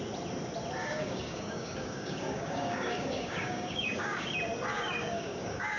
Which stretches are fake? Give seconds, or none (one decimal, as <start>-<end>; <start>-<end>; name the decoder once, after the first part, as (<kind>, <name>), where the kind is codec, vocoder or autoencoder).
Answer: 0.8-4.3 (codec, DAC); 4.7-5.8